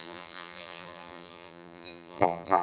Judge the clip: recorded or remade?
remade